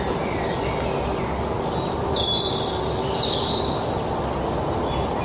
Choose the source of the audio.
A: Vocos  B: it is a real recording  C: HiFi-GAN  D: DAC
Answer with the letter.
B